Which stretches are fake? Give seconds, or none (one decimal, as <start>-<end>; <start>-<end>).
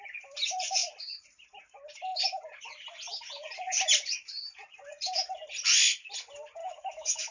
6.6-7.3